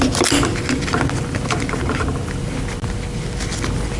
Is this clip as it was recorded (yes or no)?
yes